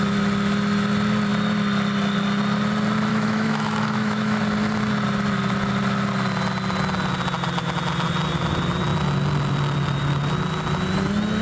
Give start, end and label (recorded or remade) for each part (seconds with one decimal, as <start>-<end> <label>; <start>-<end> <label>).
0.0-3.1 recorded; 3.1-4.4 remade; 4.4-11.4 recorded